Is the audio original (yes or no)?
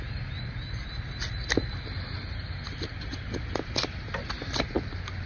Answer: yes